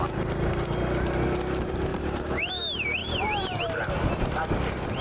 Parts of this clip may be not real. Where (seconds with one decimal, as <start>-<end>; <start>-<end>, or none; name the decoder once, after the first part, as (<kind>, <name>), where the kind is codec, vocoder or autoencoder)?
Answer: 1.9-2.5 (vocoder, BigVGAN v2); 3.0-5.0